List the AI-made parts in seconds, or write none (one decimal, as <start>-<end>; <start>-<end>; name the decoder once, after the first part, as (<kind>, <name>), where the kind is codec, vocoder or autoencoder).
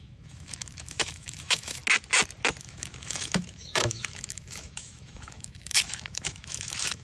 0.0-1.8 (autoencoder, DAC-VAE); 2.6-7.0